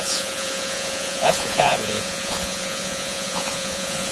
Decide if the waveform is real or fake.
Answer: fake